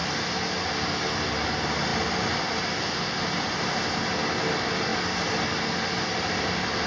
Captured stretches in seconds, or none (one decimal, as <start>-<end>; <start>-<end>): 0.0-6.9